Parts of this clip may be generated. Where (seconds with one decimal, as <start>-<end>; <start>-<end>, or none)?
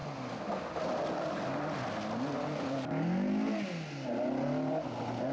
none